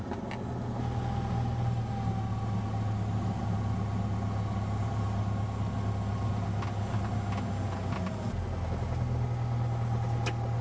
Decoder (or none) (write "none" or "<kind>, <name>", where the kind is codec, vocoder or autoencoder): none